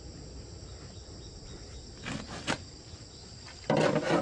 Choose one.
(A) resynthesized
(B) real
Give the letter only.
B